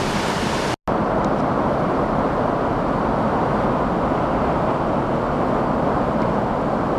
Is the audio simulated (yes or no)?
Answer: no